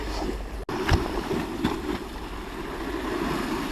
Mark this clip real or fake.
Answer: real